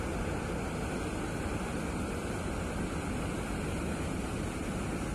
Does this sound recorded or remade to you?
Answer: recorded